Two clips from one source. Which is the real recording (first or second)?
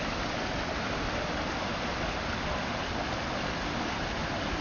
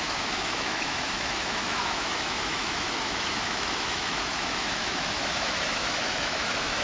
first